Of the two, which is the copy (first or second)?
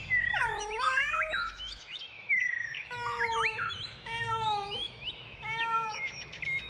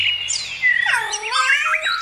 first